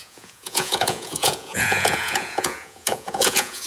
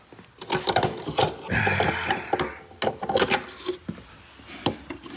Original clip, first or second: second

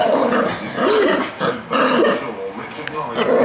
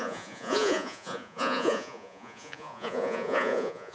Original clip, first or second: first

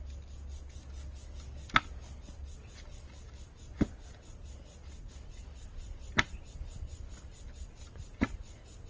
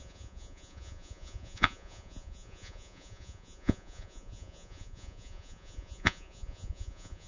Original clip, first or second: first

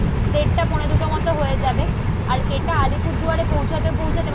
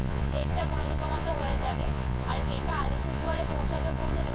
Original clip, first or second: first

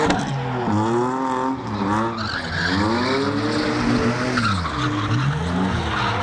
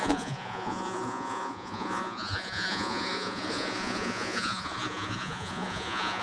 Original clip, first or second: first